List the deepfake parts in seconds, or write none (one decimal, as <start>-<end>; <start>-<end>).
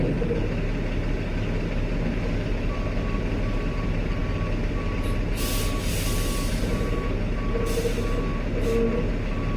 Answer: none